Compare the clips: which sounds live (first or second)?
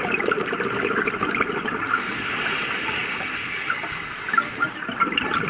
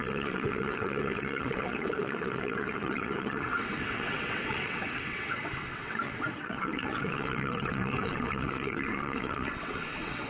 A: first